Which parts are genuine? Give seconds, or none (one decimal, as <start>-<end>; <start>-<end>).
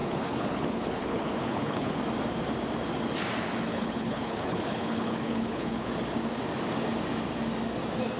2.0-3.7; 5.9-8.2